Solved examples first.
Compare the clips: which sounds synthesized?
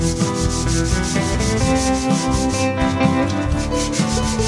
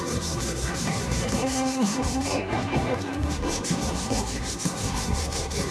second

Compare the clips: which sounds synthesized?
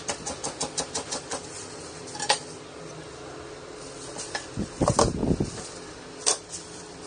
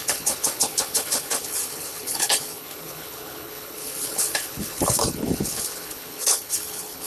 second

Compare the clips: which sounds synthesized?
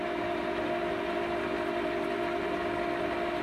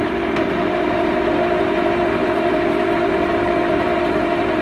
second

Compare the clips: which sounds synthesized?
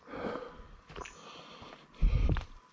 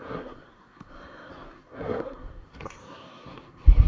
second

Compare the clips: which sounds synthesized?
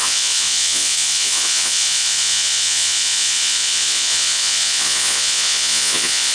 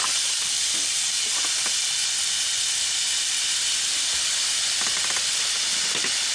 first